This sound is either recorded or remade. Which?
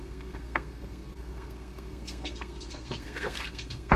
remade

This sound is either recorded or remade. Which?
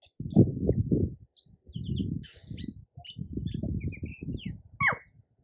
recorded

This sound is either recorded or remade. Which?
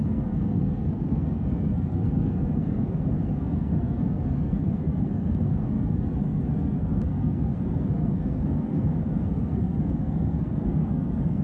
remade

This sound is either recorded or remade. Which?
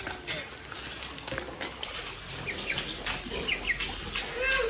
recorded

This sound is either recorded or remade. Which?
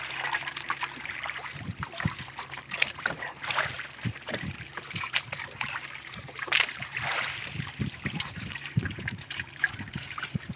remade